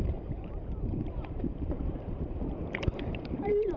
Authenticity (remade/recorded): remade